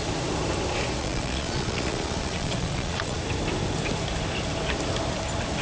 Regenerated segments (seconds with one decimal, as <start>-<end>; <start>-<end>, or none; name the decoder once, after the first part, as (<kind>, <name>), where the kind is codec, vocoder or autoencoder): 1.0-3.2 (vocoder, Vocos)